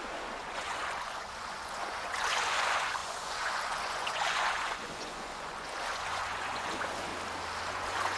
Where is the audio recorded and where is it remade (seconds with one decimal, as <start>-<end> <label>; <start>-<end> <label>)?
0.0-7.1 remade; 7.1-7.7 recorded; 7.7-8.2 remade